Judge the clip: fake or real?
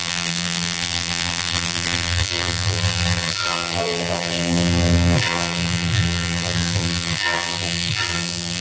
fake